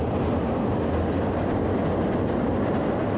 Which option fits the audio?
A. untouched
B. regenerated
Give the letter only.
A